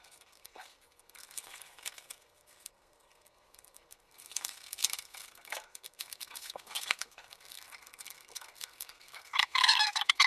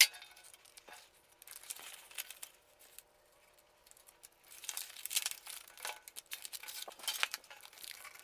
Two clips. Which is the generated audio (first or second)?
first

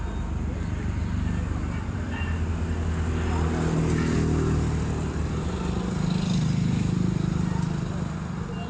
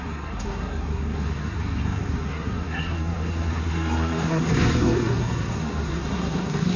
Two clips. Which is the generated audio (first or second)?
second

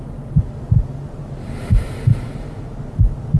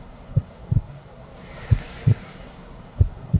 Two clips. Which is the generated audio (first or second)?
second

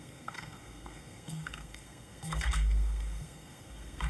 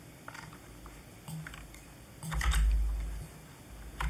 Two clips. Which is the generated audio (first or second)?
first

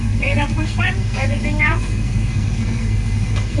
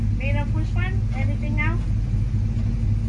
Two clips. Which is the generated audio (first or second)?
first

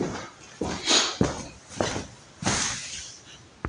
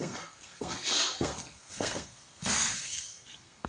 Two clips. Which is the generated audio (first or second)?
second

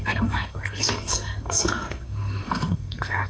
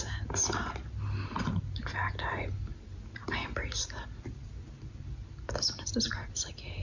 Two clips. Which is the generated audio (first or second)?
first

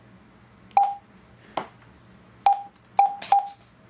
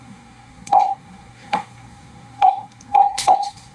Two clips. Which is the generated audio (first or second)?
second